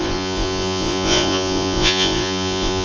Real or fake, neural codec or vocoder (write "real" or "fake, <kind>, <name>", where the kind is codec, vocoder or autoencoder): fake, vocoder, Vocos